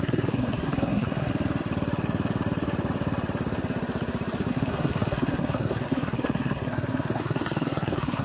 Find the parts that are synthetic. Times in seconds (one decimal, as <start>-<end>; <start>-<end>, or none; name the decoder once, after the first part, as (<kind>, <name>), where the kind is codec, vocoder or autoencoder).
0.0-1.3 (codec, SNAC); 4.5-8.2